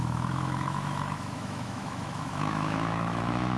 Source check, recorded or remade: remade